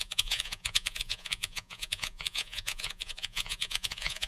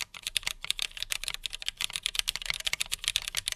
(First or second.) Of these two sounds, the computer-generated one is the first